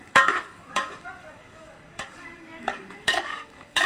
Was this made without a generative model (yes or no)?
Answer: no